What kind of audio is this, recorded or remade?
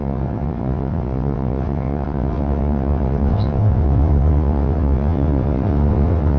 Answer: remade